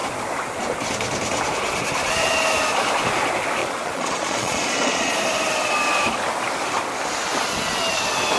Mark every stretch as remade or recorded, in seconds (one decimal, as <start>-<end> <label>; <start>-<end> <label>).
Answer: 0.0-3.6 recorded; 3.6-5.1 remade; 5.1-8.4 recorded